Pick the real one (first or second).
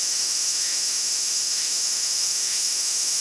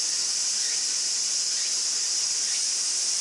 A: second